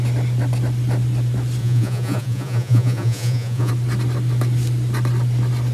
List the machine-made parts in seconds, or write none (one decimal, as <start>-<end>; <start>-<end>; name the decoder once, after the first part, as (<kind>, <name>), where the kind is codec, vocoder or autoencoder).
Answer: 1.6-3.7 (vocoder, Vocos)